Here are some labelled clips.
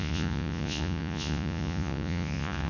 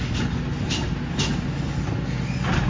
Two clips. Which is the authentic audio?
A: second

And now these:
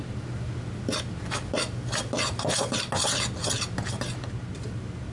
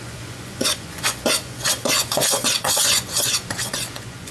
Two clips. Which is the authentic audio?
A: first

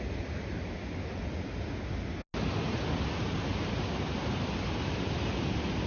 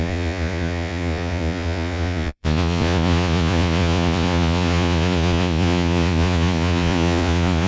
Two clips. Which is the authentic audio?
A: first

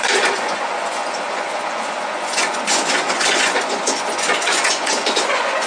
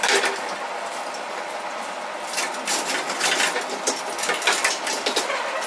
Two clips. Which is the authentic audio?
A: second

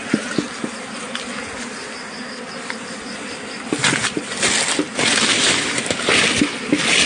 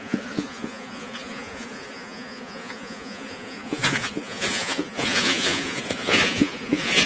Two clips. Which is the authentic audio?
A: first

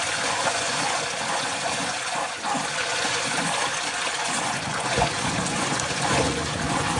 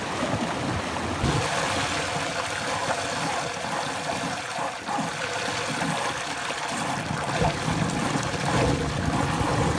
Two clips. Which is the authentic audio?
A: second